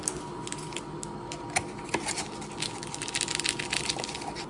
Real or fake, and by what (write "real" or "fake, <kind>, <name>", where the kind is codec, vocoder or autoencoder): real